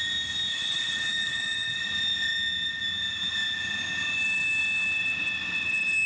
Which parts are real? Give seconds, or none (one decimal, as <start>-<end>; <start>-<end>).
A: 0.0-0.5; 1.8-6.1